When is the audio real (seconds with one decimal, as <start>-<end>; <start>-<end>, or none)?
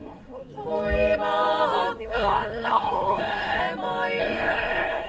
0.4-2.0; 3.6-4.2